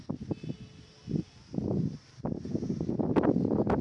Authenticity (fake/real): real